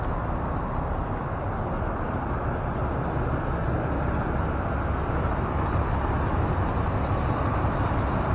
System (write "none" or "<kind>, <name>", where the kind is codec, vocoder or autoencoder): none